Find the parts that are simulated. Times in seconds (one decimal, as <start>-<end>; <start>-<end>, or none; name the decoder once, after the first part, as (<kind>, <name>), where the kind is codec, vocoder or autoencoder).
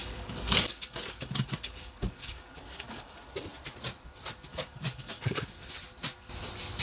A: 0.0-3.2 (codec, DAC); 4.5-5.7